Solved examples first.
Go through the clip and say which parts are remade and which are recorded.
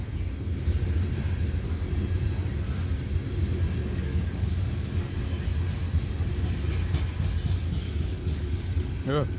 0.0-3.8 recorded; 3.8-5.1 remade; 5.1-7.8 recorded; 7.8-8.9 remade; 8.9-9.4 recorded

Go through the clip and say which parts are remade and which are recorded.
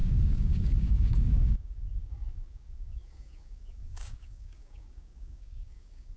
0.0-6.2 remade